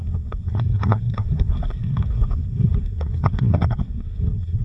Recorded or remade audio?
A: remade